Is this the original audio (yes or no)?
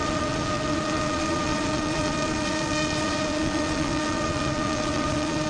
no